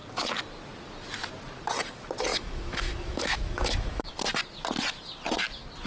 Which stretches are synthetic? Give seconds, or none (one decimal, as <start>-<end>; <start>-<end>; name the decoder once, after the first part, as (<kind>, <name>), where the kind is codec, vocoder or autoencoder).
2.3-4.1 (autoencoder, DAC-VAE)